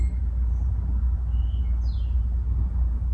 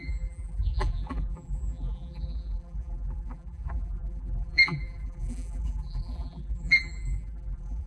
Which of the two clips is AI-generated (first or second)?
second